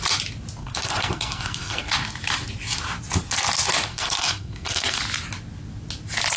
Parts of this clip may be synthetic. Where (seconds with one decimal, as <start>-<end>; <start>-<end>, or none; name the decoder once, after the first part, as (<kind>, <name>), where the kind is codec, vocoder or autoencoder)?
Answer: 0.6-1.9 (codec, SNAC); 3.9-5.0